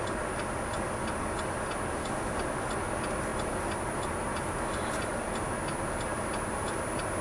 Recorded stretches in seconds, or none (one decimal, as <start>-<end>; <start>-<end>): 0.0-7.2